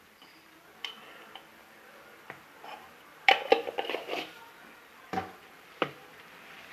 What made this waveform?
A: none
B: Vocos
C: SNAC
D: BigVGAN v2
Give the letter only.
D